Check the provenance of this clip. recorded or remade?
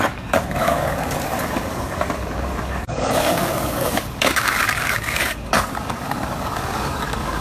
remade